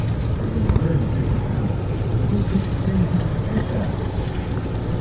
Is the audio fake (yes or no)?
no